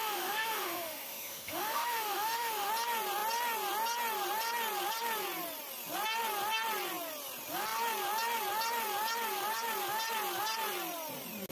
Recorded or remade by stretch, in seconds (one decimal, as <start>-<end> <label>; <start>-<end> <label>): 0.0-2.7 remade; 2.7-11.5 recorded